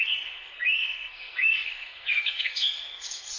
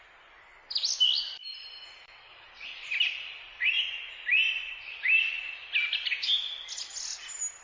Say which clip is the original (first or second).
second